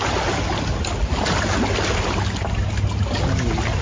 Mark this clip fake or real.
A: real